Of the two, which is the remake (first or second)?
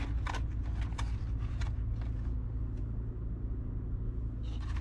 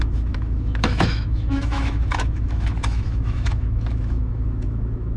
second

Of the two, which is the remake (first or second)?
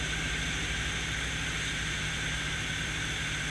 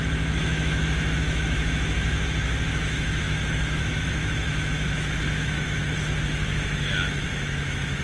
second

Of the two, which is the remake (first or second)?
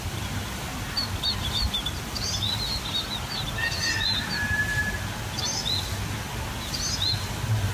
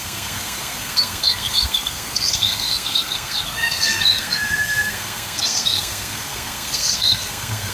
second